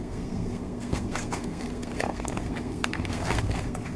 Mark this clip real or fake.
fake